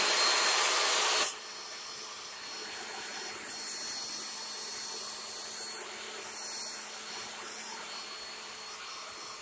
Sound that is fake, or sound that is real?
real